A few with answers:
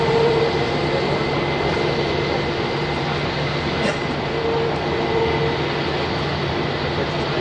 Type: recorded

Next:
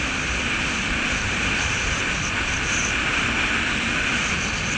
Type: recorded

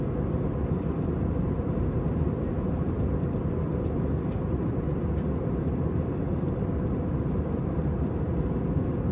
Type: remade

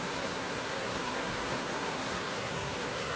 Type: remade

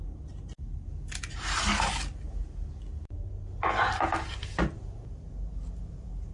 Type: recorded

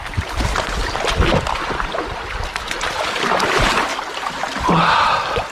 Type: recorded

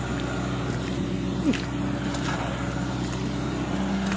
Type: recorded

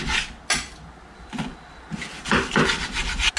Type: recorded